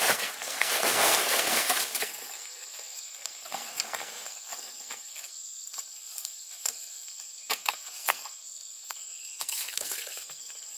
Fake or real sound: fake